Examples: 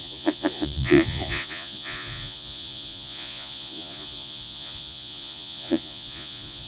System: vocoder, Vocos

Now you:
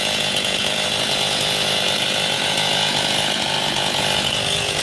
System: vocoder, Vocos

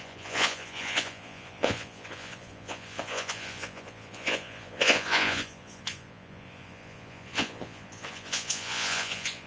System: vocoder, Vocos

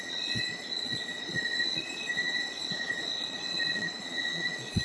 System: vocoder, Vocos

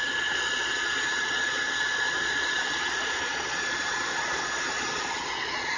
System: vocoder, Vocos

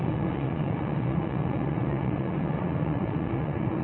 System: vocoder, Vocos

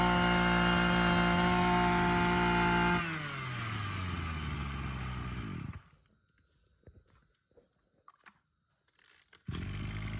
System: none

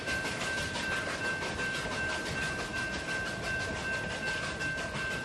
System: none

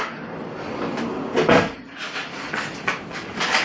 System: none